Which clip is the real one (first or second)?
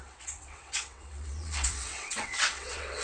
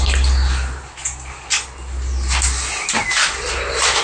second